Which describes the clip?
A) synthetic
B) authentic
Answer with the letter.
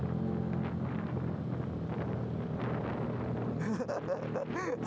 B